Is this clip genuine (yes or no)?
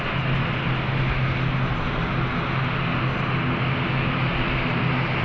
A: yes